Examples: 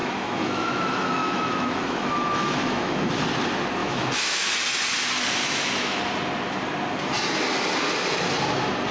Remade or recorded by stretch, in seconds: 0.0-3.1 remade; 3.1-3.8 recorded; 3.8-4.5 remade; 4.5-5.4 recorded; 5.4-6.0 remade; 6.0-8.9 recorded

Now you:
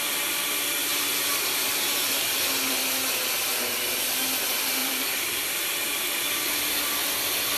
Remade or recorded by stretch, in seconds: 0.0-4.8 recorded; 4.8-6.1 remade; 6.1-7.6 recorded

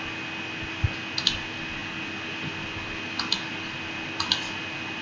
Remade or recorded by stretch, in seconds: 0.0-5.0 recorded

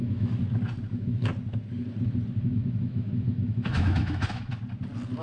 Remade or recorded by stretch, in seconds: 0.0-0.4 remade; 0.4-0.9 recorded; 0.9-1.3 remade; 1.3-2.4 recorded; 2.4-4.5 remade; 4.5-5.2 recorded